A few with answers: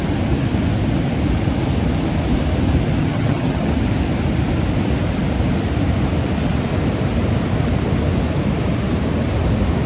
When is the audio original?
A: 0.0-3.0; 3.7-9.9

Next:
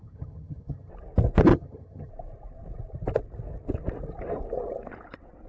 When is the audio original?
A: 0.9-1.5; 2.1-5.5

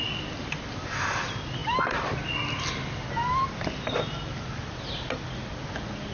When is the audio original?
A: 0.0-6.1

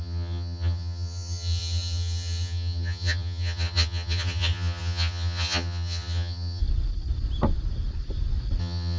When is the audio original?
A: 6.6-8.6

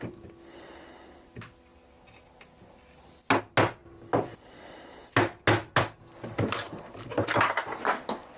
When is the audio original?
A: 0.0-8.4

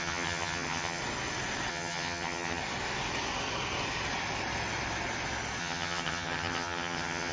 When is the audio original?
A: 1.0-1.7; 2.6-5.6

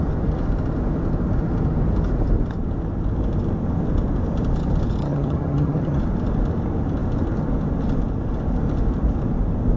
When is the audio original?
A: 0.0-5.0; 6.0-9.8